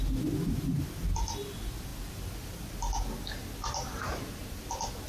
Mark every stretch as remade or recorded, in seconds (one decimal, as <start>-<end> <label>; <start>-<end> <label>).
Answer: 0.0-5.1 recorded